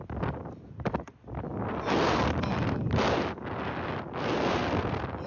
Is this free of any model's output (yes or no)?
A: yes